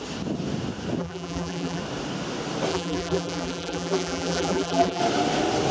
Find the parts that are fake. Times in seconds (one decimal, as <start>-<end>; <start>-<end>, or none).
1.0-1.8; 2.7-5.0